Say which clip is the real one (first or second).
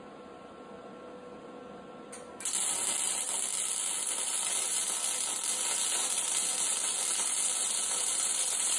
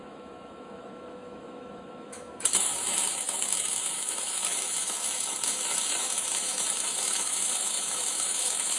first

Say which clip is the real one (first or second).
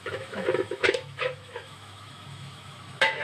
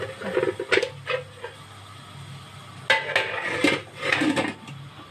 second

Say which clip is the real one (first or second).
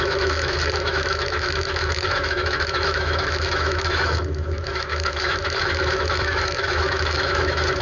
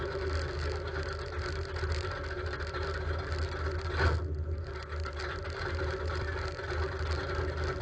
second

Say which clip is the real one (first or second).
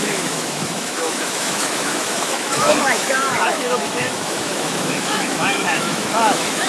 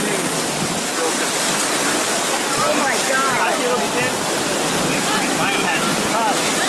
second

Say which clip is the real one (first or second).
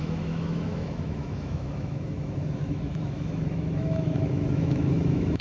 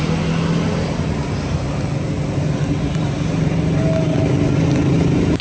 second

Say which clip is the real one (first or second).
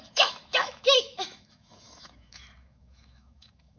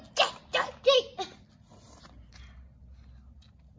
second